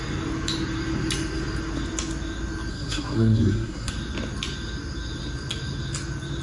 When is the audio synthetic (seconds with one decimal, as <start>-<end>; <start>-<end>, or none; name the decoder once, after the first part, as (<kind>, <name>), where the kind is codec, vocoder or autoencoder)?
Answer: 2.7-3.9 (codec, SNAC)